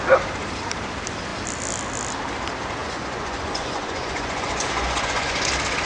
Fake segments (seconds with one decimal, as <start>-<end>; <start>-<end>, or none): 2.8-5.5